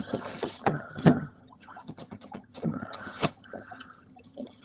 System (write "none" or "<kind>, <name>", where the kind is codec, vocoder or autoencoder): vocoder, HiFi-GAN